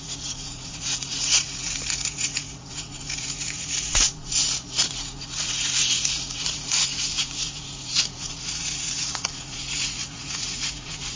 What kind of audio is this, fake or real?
fake